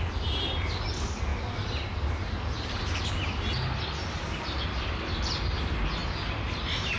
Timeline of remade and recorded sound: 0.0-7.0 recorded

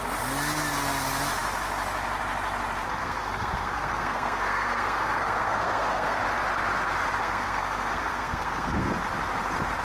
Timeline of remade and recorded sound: 0.0-3.0 recorded; 3.0-6.2 remade; 6.2-7.2 recorded; 7.2-8.9 remade; 8.9-9.8 recorded